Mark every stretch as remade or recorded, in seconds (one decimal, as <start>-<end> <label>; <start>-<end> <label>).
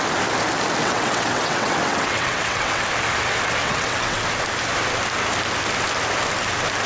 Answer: 0.0-0.8 recorded; 0.8-2.8 remade; 2.8-3.6 recorded; 3.6-4.2 remade; 4.2-6.9 recorded